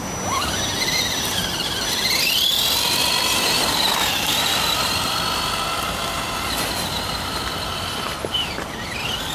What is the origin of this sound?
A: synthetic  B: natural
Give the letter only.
B